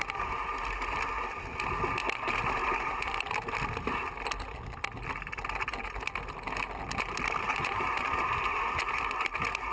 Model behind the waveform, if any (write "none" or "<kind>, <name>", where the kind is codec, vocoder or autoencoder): none